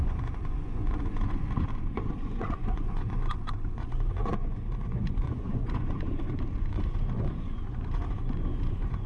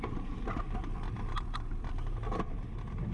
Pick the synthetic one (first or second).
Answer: first